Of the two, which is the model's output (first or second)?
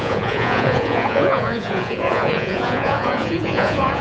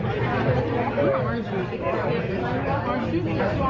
first